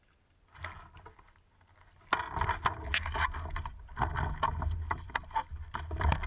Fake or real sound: real